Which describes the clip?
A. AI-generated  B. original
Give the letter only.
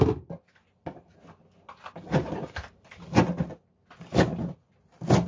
B